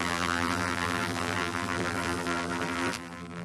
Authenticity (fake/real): fake